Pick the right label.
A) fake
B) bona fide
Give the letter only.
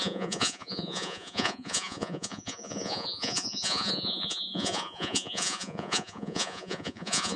A